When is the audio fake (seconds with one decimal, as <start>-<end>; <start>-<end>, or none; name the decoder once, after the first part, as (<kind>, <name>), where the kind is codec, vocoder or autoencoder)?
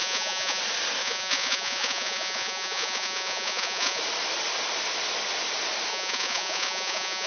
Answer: 0.0-0.6 (vocoder, Vocos); 1.0-4.0; 5.9-7.3